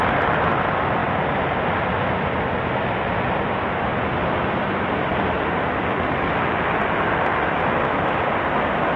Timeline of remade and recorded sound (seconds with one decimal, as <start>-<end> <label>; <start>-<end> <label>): 0.0-1.0 remade; 1.0-1.6 recorded; 1.6-3.9 remade; 3.9-4.6 recorded; 4.6-5.1 remade; 5.1-8.6 recorded; 8.6-9.0 remade